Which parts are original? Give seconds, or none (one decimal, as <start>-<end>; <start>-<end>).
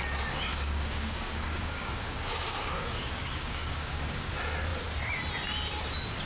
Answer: 0.0-0.5; 4.3-6.3